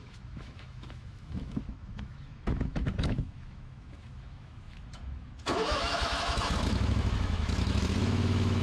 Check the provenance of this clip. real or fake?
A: fake